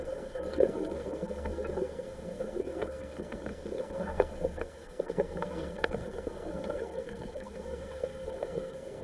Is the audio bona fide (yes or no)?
no